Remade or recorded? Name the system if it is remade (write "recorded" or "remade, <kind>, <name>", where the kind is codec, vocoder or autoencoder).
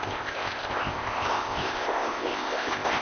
remade, codec, ZipCodec